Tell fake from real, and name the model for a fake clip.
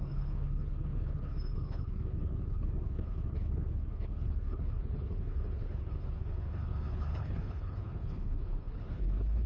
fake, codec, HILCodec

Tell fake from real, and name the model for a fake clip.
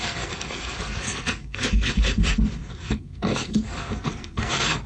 fake, codec, SNAC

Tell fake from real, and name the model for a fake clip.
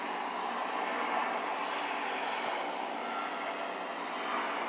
real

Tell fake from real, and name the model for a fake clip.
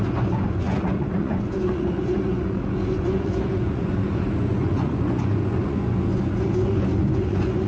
fake, vocoder, Vocos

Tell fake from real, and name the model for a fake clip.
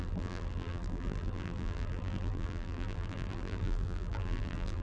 fake, vocoder, BigVGAN v2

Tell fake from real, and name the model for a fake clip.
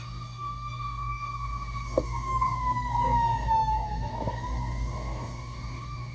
fake, codec, DAC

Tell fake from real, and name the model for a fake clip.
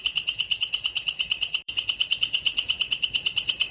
fake, vocoder, BigVGAN v2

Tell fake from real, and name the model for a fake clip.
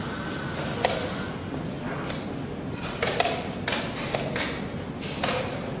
real